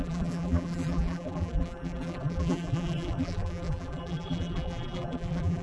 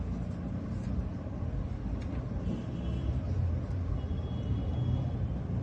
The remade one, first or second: first